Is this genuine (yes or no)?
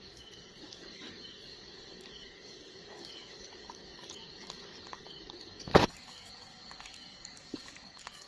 no